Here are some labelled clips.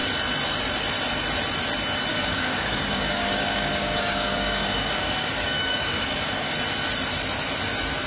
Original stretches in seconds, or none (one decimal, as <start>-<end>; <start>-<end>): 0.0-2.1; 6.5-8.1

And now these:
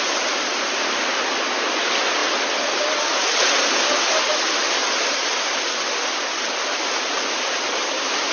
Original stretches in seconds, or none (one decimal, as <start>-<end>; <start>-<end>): 0.0-8.3

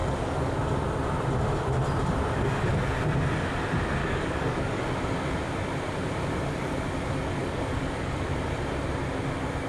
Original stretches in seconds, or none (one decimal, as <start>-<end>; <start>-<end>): 0.6-4.0; 4.8-7.4; 8.3-9.7

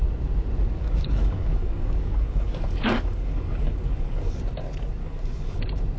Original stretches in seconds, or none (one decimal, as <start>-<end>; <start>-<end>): 0.0-0.8; 4.4-5.0; 5.6-6.0

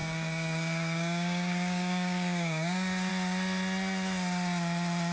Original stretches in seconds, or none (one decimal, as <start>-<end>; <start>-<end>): 3.1-5.1

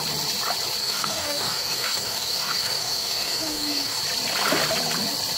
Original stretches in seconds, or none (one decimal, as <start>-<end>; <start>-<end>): 0.0-0.8; 4.0-5.4

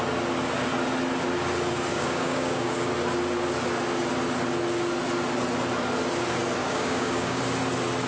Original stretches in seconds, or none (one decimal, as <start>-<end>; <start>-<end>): 0.0-1.9; 2.9-6.6; 7.4-8.1